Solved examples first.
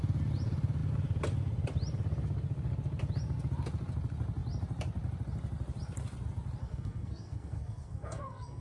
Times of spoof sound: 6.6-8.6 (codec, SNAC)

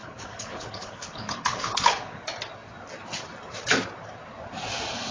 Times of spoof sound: 0.0-2.2 (codec, HILCodec)